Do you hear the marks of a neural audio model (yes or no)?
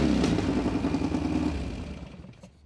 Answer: no